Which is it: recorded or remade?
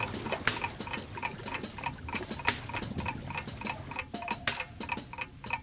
recorded